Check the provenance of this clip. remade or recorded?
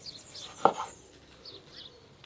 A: recorded